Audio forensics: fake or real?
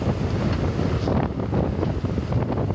real